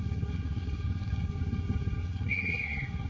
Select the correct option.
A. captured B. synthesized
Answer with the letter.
B